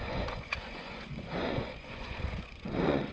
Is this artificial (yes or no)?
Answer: yes